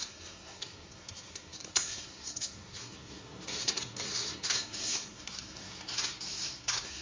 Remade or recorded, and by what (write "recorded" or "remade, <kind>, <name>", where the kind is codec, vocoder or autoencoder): remade, codec, SNAC